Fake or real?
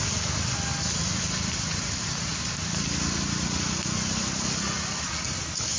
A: real